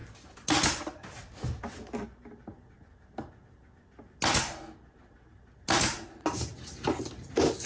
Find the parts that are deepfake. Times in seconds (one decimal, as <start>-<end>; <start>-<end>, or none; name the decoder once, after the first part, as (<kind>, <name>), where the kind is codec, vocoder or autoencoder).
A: none